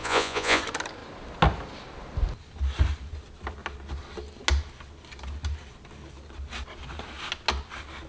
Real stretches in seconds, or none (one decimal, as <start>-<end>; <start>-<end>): 0.6-8.1